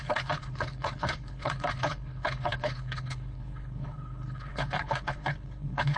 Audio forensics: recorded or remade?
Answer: remade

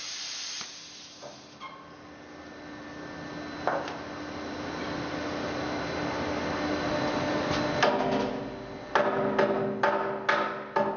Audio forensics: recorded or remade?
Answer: recorded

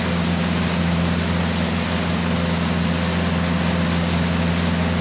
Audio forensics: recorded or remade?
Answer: recorded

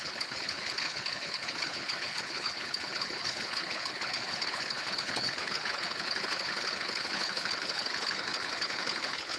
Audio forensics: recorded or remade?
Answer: remade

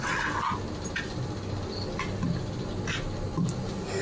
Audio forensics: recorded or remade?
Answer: recorded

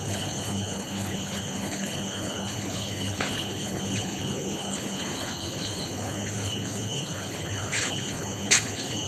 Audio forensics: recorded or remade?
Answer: remade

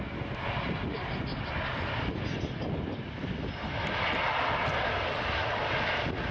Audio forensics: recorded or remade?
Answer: recorded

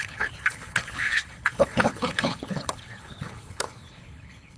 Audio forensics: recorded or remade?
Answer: remade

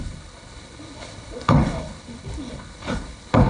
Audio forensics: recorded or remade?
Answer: remade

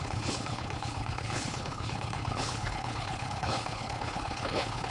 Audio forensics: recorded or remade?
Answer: remade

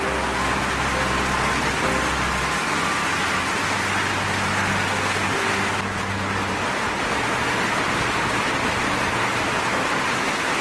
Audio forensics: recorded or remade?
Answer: recorded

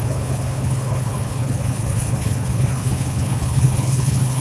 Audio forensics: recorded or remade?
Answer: remade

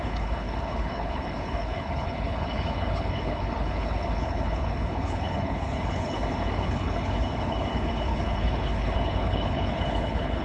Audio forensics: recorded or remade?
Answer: remade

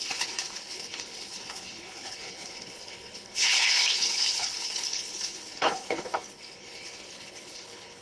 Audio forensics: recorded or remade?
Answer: remade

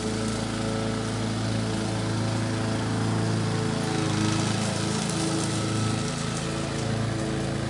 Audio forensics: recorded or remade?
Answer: recorded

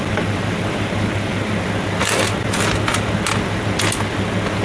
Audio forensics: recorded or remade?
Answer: recorded